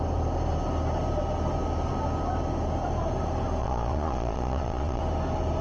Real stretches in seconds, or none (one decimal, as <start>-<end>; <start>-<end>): 0.0-3.6; 5.0-5.6